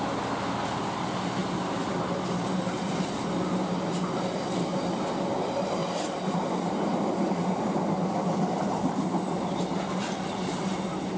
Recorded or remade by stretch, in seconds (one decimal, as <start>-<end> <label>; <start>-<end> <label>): 0.0-1.4 recorded; 1.4-3.4 remade; 3.4-5.8 recorded; 5.8-8.9 remade; 8.9-11.2 recorded